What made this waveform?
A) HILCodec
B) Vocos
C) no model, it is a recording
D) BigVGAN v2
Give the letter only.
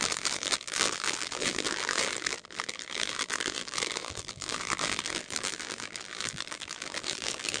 D